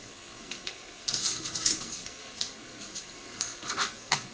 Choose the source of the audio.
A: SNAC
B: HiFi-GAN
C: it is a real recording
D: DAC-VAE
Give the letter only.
A